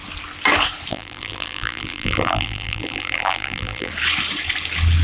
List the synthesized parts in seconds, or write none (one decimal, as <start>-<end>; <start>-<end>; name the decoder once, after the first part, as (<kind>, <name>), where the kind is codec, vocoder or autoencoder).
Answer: 0.9-3.9 (vocoder, BigVGAN v2)